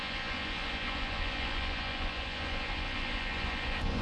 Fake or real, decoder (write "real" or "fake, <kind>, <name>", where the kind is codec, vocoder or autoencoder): fake, vocoder, Vocos